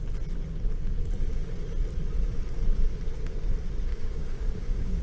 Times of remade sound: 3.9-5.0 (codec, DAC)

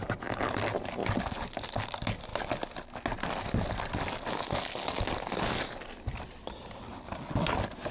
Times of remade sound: none

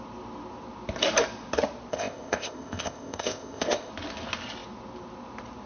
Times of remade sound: 1.9-3.9 (codec, ZipCodec)

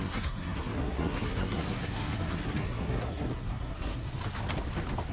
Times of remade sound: 0.0-4.1 (codec, SNAC)

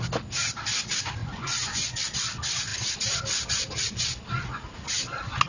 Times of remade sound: 1.2-2.0 (vocoder, Vocos)

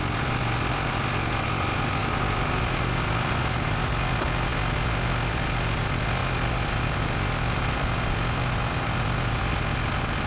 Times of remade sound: none

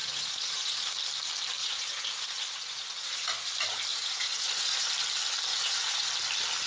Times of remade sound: 0.0-0.9 (vocoder, Vocos); 1.6-3.5; 3.9-4.9; 5.5-6.1

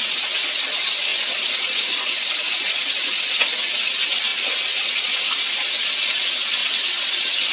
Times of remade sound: 1.1-3.4 (vocoder, Vocos); 4.3-5.5